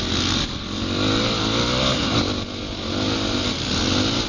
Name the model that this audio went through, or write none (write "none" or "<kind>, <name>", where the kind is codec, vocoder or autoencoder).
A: none